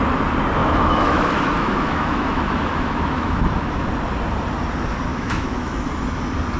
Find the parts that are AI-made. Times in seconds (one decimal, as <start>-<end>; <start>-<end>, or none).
0.6-3.9; 5.1-5.9